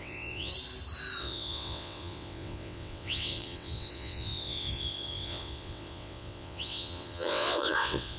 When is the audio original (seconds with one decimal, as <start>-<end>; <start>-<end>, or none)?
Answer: 0.5-1.2